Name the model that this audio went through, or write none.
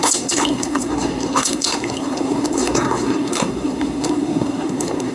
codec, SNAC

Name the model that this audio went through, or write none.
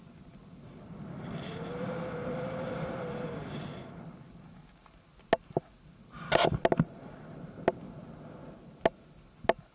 none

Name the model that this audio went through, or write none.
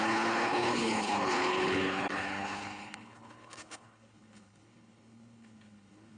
codec, HILCodec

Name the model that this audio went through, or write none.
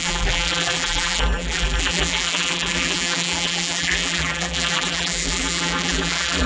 vocoder, BigVGAN v2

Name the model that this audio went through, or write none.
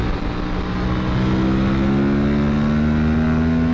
none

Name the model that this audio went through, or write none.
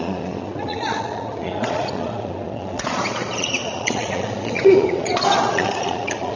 vocoder, Vocos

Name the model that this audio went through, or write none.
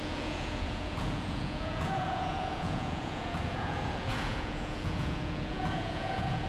vocoder, Vocos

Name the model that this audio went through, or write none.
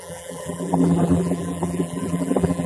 vocoder, BigVGAN v2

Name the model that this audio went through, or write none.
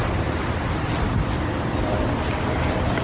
none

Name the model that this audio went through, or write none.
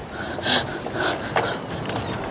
none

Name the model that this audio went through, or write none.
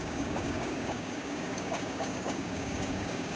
codec, DAC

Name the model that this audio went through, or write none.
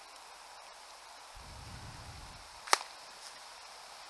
none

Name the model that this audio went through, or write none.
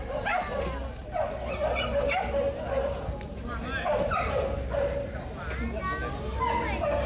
none